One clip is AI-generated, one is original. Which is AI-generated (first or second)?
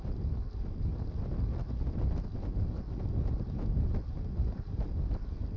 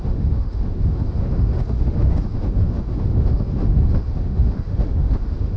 second